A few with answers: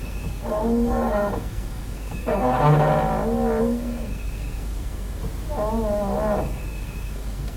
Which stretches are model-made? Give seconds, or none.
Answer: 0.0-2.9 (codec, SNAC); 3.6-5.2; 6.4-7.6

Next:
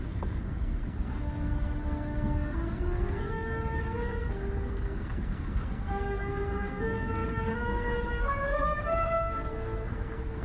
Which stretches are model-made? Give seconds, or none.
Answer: 0.0-10.4 (codec, SNAC)

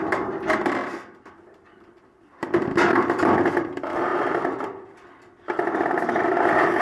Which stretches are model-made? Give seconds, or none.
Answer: 0.0-0.8 (vocoder, BigVGAN v2); 1.3-2.9; 3.5-6.8

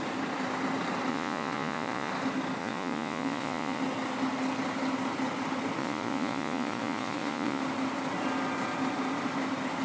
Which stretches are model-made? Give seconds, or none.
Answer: 1.1-2.1 (vocoder, Vocos); 2.6-3.8; 5.8-7.6

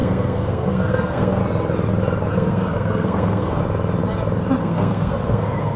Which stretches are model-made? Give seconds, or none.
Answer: 0.0-1.4 (codec, SNAC); 2.3-3.6; 4.6-5.8

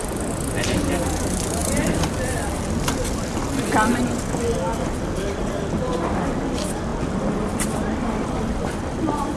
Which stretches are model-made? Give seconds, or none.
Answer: 1.6-4.0 (vocoder, BigVGAN v2); 4.7-6.1; 6.9-8.6

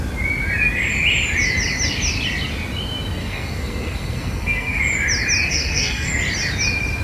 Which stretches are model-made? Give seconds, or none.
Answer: 3.2-4.8 (codec, SNAC); 5.5-6.1